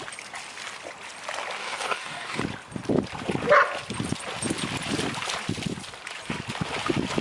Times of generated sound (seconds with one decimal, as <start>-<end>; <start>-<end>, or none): 1.6-2.4